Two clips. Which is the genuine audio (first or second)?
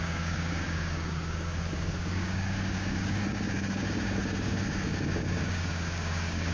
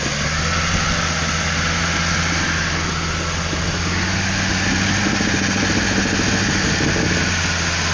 second